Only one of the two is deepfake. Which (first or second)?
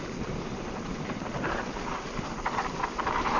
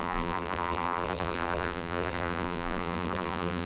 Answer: second